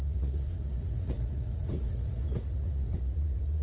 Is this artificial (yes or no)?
yes